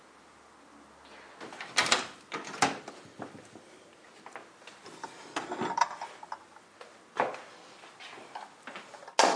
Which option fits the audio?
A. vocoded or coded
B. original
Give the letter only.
B